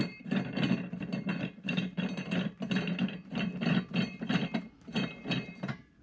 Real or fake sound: real